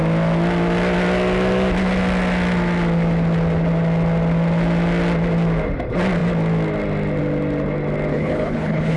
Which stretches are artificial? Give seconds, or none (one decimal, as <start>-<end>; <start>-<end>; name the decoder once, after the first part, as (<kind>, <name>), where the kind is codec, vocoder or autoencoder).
8.1-9.0 (codec, HILCodec)